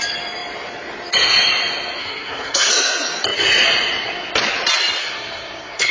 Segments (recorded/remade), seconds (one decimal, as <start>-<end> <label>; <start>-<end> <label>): 0.0-2.0 recorded; 2.0-2.7 remade; 2.7-5.0 recorded; 5.0-5.9 remade